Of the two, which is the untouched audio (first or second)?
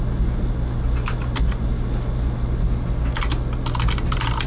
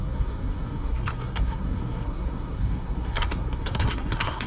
first